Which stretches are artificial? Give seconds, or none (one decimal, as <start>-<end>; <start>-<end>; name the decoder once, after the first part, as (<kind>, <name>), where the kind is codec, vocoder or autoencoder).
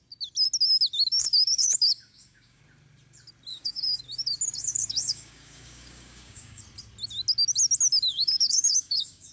1.2-2.6 (codec, DAC); 3.5-4.0; 4.5-6.6; 8.1-9.3